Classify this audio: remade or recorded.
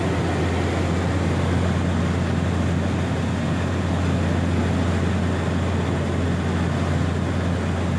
recorded